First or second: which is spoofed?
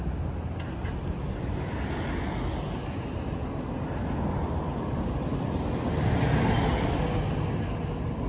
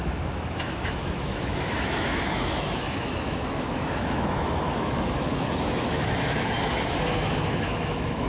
second